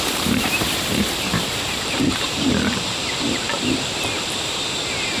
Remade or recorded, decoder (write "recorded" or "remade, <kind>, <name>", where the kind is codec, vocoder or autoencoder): remade, vocoder, BigVGAN v2